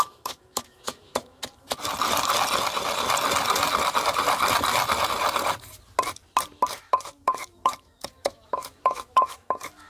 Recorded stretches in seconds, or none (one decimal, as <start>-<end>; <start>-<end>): 1.4-6.7